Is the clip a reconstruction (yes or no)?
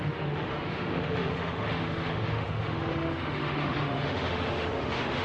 yes